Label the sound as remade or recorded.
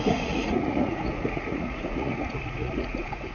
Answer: remade